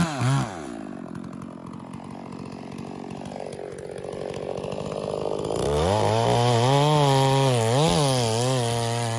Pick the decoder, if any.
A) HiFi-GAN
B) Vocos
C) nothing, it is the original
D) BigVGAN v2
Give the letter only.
C